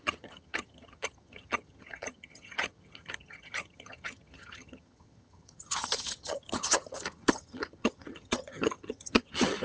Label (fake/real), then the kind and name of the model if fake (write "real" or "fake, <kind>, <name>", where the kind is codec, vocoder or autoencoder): fake, vocoder, HiFi-GAN